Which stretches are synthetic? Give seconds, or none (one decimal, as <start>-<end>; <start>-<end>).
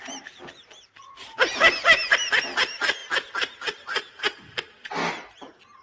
none